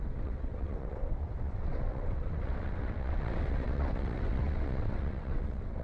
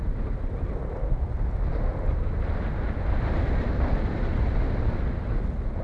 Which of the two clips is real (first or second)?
second